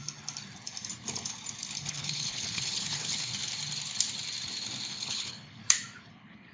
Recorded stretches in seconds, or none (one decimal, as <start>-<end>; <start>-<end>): 0.0-1.9; 3.3-4.9; 5.6-6.1